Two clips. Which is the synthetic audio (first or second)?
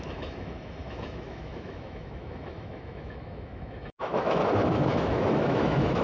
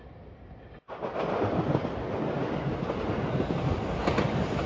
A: first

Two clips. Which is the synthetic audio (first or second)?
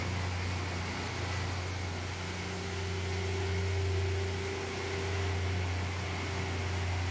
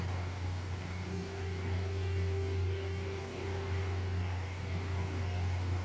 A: second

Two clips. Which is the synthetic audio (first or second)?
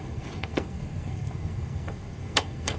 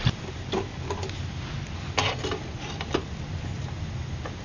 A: first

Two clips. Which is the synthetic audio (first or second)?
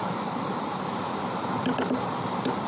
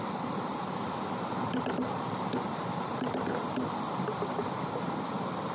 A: second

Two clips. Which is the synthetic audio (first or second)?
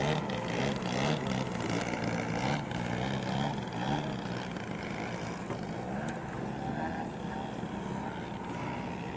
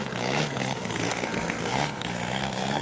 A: second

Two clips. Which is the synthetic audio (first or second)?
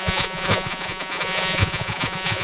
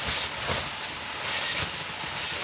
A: first